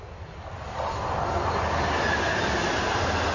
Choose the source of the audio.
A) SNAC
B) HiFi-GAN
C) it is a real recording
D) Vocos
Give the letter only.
C